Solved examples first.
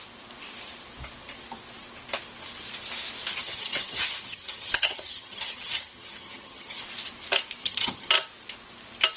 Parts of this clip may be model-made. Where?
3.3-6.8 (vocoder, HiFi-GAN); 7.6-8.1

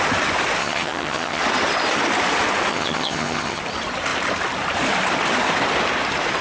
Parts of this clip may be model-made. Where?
0.6-1.4 (vocoder, HiFi-GAN); 2.7-3.6

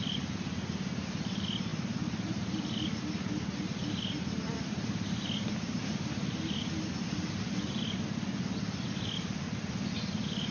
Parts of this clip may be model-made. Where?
none

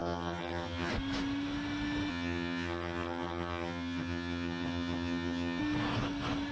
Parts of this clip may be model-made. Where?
0.0-0.9 (vocoder, HiFi-GAN); 2.1-5.6

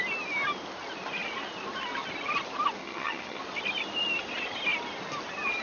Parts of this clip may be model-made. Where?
2.8-3.4 (vocoder, HiFi-GAN)